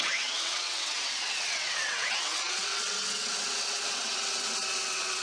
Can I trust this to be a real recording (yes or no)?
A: no